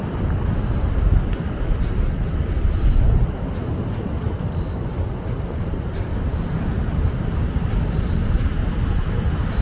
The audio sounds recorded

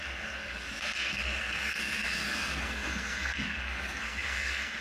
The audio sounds remade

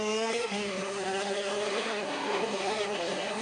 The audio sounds remade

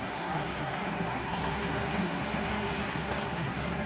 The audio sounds remade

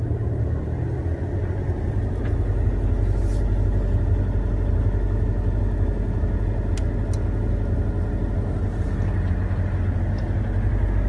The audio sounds recorded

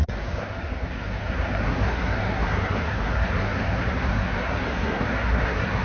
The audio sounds remade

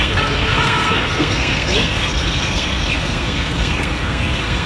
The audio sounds remade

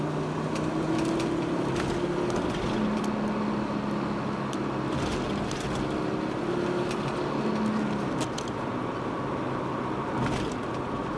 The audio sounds recorded